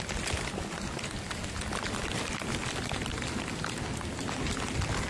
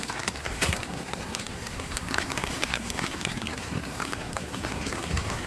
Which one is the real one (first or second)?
first